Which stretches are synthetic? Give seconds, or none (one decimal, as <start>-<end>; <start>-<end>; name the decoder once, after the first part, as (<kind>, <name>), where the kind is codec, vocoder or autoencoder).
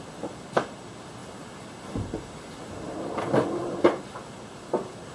none